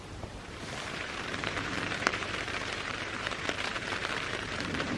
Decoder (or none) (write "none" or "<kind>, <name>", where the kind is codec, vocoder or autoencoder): vocoder, BigVGAN v2